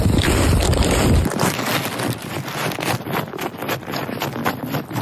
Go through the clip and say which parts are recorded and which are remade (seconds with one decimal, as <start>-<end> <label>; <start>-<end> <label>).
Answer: 0.0-5.0 recorded